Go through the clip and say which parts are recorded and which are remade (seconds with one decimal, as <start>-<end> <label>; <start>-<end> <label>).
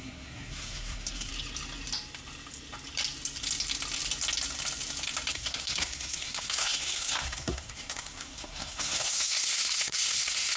0.0-1.3 remade; 1.3-5.3 recorded; 5.3-10.6 remade